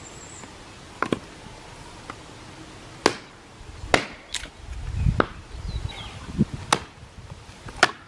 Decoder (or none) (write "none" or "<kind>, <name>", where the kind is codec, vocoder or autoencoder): none